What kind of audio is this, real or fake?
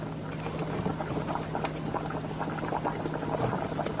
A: real